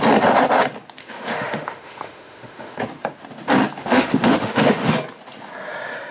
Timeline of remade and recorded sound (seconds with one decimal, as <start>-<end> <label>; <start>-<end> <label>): 0.0-1.0 recorded; 1.0-2.8 remade; 2.8-3.8 recorded; 3.8-4.9 remade; 4.9-6.1 recorded

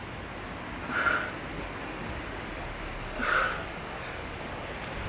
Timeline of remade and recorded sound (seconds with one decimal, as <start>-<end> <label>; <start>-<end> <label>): 0.0-1.5 recorded; 1.5-4.6 remade; 4.6-5.1 recorded

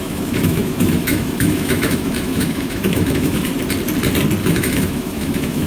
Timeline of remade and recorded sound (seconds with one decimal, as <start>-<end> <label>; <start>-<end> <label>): 0.0-3.5 remade; 3.5-4.4 recorded; 4.4-5.7 remade

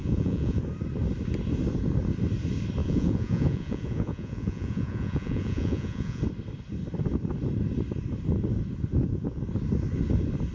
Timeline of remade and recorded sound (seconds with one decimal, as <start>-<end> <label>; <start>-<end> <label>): 0.0-0.6 remade; 0.6-2.8 recorded; 2.8-6.2 remade; 6.2-8.9 recorded; 8.9-9.4 remade; 9.4-10.5 recorded

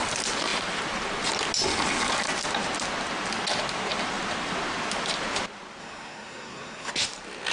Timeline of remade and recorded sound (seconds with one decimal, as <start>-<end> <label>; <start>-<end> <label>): 0.0-5.8 recorded; 5.8-6.9 remade; 6.9-7.5 recorded

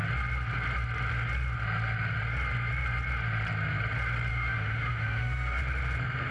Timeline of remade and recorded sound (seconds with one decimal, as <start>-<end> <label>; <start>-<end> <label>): 0.0-4.3 recorded; 4.3-5.6 remade; 5.6-6.3 recorded

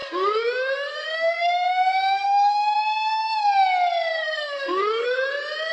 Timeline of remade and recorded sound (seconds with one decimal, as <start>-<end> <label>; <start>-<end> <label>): 0.0-3.4 remade; 3.4-4.1 recorded; 4.1-5.3 remade; 5.3-5.7 recorded